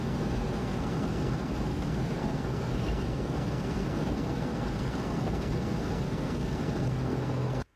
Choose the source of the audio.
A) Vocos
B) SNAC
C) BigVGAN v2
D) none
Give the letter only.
B